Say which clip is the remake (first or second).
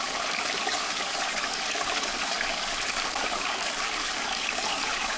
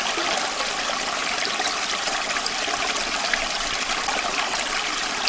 first